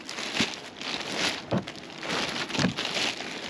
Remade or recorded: recorded